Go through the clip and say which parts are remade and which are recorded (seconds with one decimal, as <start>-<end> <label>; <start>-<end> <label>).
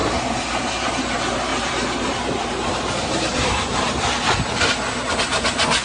0.0-1.5 recorded; 1.5-4.3 remade; 4.3-5.8 recorded